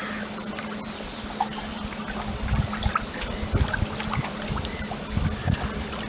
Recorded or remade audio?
recorded